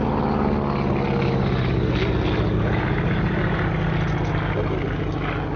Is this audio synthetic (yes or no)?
no